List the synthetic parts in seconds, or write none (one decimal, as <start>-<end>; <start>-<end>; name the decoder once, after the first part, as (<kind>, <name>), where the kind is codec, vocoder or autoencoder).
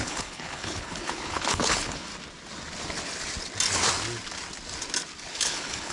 0.0-2.1 (codec, HILCodec); 5.3-5.9